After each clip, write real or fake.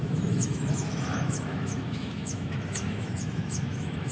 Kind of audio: fake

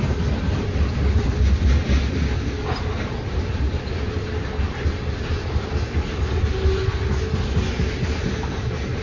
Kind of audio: real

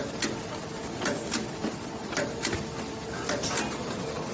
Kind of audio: real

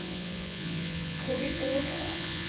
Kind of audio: fake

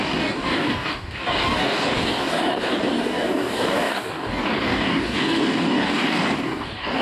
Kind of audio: fake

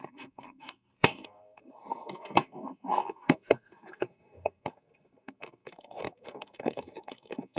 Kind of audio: fake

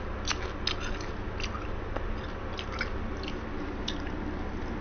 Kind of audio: real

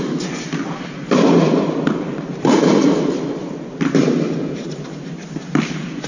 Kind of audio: real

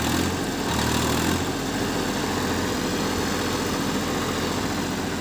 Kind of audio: real